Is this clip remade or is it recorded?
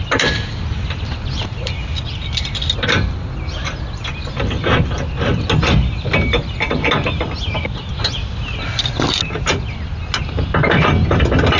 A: recorded